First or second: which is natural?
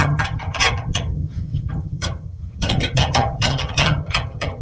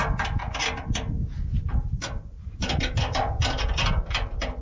second